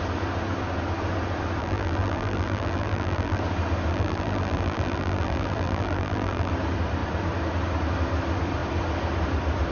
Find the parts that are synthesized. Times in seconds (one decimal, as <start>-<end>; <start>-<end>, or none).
1.6-3.4; 3.9-6.5